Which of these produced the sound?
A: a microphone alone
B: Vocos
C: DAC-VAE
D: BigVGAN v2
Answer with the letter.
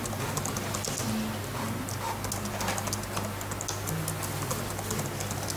A